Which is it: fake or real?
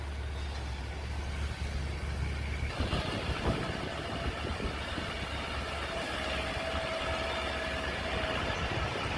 real